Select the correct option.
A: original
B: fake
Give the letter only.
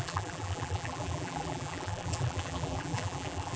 B